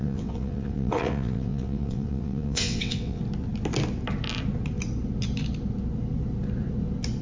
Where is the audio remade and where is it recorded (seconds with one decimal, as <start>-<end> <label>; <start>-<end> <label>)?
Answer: 0.0-3.2 remade; 3.2-7.2 recorded